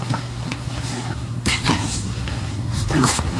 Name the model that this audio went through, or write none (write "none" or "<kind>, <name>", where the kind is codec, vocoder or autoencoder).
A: codec, SNAC